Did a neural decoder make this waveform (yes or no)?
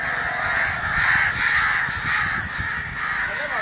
no